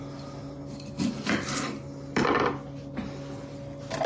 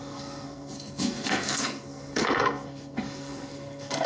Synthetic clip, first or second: second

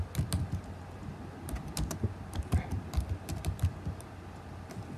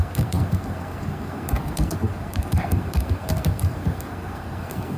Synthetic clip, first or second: second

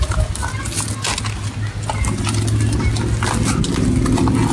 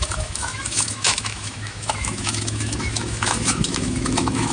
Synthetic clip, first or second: second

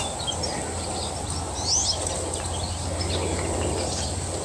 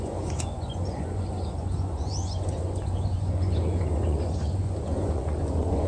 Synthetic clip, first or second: second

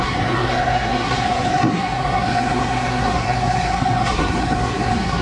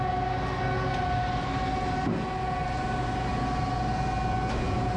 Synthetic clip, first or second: first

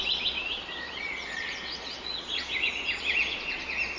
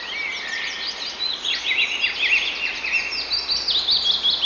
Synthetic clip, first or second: first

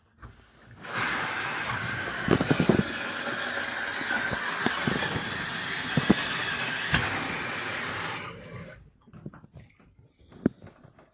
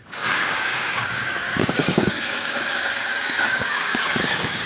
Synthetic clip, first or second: second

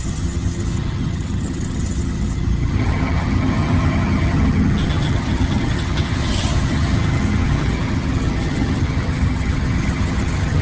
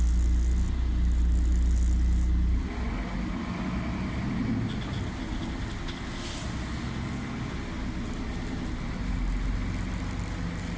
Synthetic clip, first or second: first